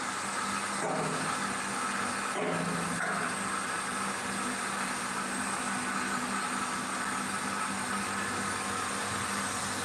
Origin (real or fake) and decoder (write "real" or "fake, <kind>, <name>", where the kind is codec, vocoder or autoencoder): real